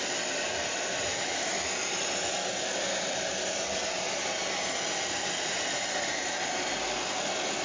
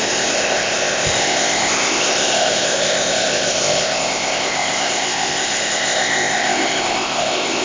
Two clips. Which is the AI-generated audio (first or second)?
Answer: second